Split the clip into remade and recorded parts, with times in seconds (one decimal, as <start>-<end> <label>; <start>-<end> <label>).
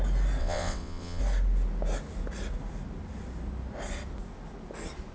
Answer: 0.0-0.4 recorded; 0.4-1.2 remade; 1.2-5.1 recorded